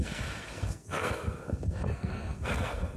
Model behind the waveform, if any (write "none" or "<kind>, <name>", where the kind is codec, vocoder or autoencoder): codec, SNAC